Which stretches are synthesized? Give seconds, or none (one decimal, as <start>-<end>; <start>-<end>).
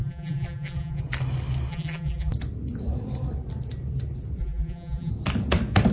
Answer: 0.0-1.0; 1.7-2.3; 4.4-5.1